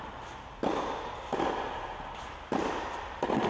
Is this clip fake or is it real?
real